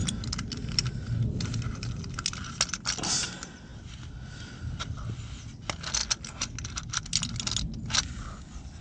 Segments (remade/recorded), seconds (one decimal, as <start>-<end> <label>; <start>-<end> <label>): 0.0-8.8 recorded